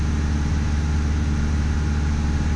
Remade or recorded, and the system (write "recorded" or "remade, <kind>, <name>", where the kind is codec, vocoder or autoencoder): recorded